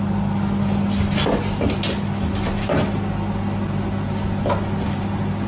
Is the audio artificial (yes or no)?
no